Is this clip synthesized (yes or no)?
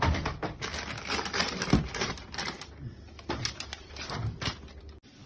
no